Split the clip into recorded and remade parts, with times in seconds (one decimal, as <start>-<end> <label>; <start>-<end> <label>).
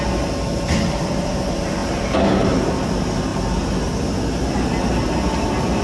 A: 0.0-5.8 recorded